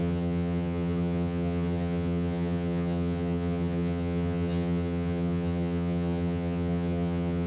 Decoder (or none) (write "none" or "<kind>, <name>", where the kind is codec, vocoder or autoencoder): vocoder, HiFi-GAN